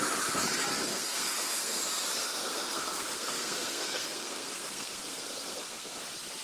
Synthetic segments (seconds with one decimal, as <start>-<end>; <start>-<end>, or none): 0.9-1.8; 2.2-6.0